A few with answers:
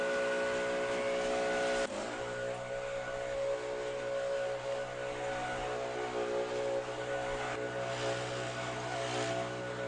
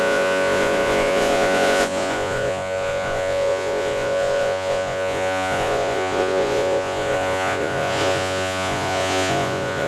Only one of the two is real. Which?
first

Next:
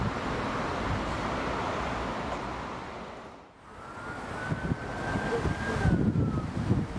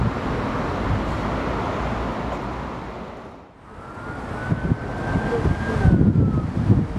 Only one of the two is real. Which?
second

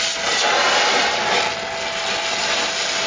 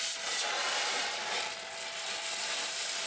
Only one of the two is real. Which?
first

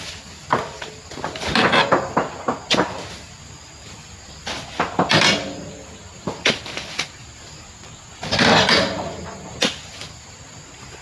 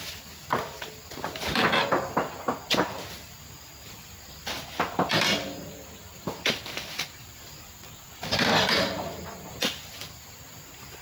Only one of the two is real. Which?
first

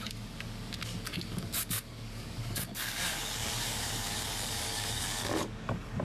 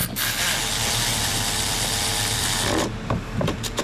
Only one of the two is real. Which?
second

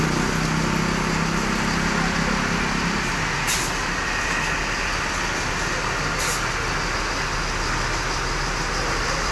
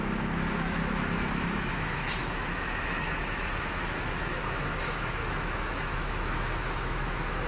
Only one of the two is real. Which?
first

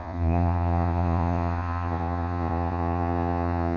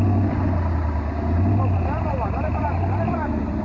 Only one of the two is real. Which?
second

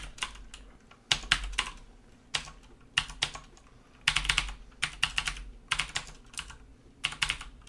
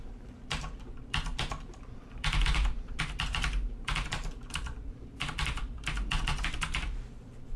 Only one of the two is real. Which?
first